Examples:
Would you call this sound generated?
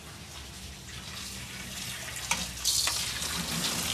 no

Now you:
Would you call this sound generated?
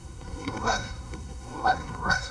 yes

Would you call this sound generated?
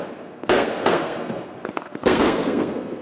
yes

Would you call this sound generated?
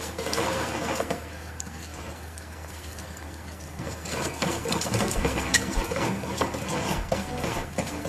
yes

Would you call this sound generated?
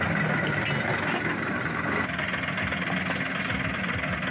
no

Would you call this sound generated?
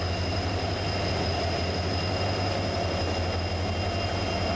no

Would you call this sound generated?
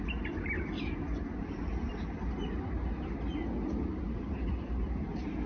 no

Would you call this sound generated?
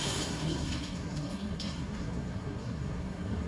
yes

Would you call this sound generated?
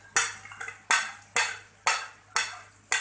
no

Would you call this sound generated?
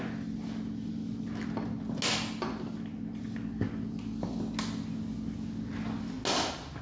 no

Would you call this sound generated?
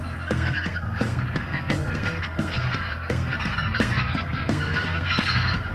yes